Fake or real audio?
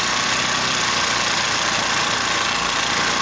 real